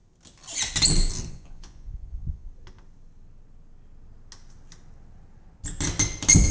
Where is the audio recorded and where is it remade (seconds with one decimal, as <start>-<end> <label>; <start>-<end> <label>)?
0.0-1.3 recorded; 1.3-2.5 remade; 2.5-6.5 recorded